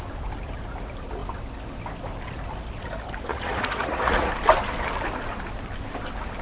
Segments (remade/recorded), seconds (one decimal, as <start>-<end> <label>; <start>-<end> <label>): 0.0-3.3 recorded; 3.3-4.3 remade; 4.3-6.4 recorded